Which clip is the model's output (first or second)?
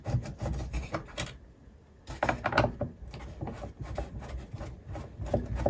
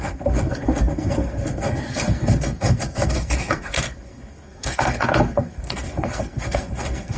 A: second